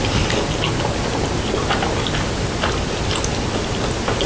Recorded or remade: recorded